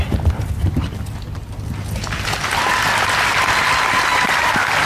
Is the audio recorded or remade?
recorded